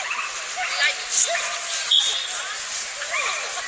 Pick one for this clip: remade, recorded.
recorded